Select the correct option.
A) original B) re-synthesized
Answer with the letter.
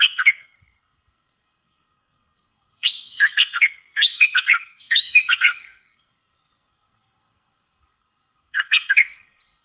B